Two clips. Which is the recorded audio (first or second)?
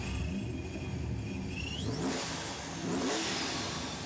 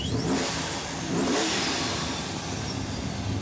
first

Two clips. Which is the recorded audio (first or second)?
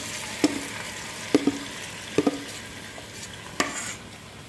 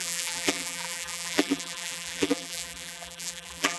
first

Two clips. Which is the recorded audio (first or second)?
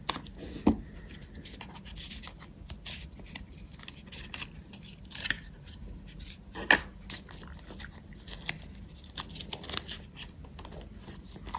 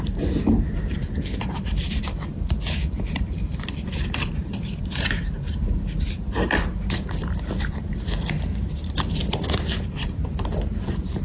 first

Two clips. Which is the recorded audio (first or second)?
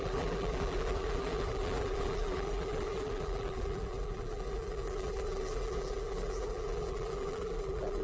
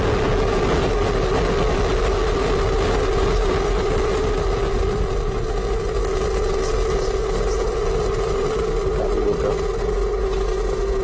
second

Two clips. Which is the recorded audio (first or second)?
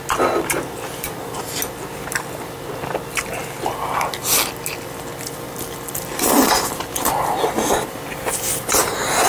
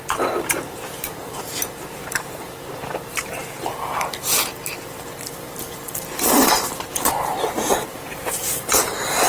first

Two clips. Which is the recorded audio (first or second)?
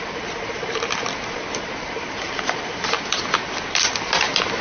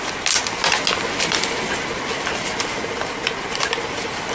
second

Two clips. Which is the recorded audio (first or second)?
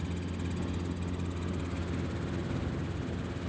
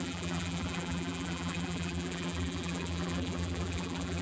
first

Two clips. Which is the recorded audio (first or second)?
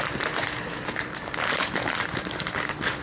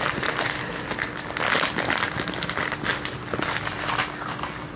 second